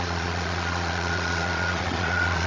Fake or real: fake